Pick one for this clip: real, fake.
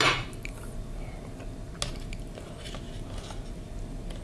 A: real